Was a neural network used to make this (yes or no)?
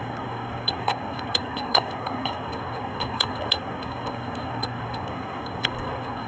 yes